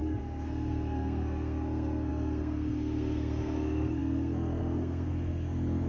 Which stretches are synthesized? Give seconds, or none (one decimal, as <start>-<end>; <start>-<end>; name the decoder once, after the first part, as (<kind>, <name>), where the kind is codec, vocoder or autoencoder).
0.0-5.9 (codec, SNAC)